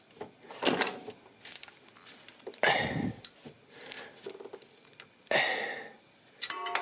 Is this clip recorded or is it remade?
recorded